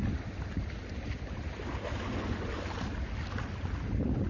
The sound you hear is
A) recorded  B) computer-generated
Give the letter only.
A